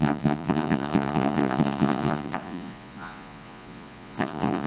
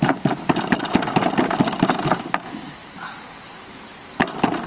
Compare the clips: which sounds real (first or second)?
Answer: second